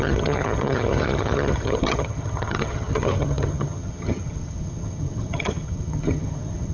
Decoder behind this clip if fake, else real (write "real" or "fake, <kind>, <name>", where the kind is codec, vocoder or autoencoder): fake, vocoder, HiFi-GAN